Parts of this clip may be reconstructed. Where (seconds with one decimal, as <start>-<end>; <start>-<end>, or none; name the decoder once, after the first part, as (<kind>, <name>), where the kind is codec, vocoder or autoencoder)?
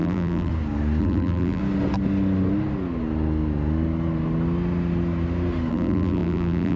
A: 0.0-0.5 (vocoder, BigVGAN v2); 1.0-1.6; 5.7-6.8